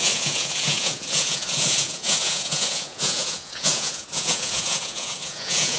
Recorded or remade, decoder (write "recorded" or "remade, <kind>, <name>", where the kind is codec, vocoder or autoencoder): remade, vocoder, Vocos